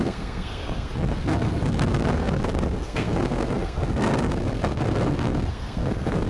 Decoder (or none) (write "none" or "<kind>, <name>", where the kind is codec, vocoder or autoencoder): codec, SNAC